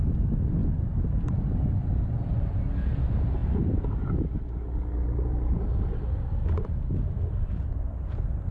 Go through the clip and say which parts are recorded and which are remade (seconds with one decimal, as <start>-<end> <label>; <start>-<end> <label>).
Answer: 0.0-8.5 recorded